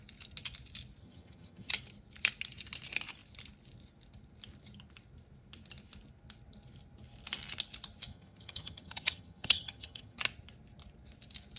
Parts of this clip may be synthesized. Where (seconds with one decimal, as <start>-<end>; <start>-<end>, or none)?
1.0-1.7; 8.1-10.2